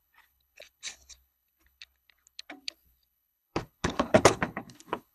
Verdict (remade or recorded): remade